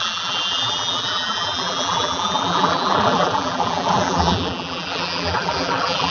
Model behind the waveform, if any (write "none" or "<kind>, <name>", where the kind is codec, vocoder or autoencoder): vocoder, BigVGAN v2